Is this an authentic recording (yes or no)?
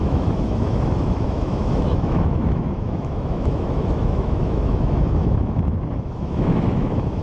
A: no